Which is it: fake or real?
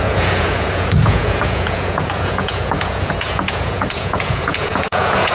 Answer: fake